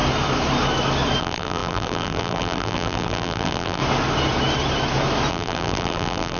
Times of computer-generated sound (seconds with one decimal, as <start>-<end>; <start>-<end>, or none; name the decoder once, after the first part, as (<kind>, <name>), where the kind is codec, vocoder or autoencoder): 1.2-3.8 (vocoder, BigVGAN v2); 5.3-6.4